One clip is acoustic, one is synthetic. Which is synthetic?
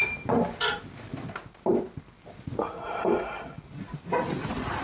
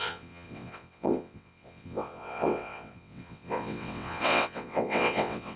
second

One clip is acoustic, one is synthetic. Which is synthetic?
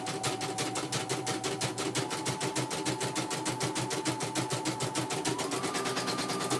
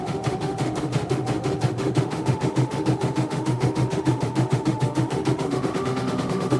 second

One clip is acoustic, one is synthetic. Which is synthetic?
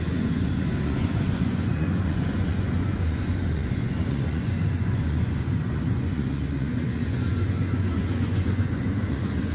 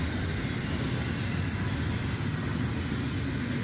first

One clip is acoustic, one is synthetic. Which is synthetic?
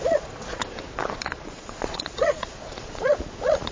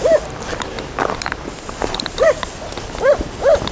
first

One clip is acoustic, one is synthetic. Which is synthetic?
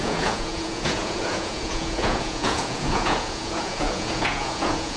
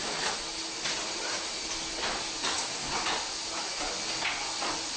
first